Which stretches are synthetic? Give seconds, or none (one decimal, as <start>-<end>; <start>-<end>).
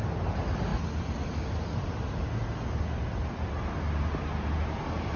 none